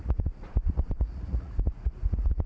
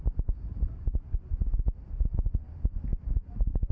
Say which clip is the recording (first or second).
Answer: second